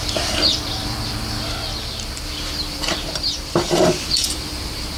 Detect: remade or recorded remade